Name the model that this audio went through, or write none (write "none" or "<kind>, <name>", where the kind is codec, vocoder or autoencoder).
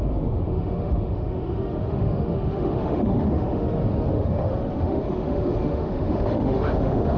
autoencoder, DAC-VAE